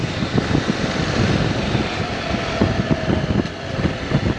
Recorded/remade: recorded